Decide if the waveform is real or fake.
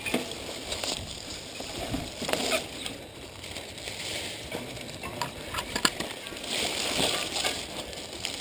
fake